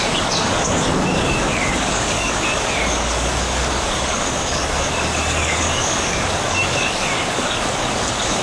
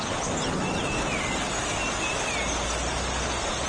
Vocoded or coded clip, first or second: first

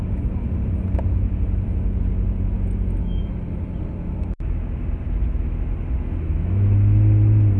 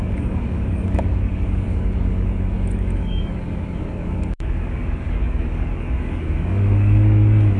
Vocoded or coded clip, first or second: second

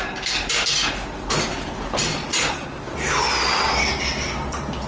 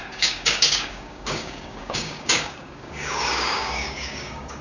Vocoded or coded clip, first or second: second